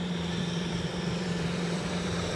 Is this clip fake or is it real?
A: fake